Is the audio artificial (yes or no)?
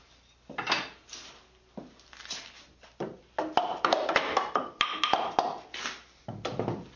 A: no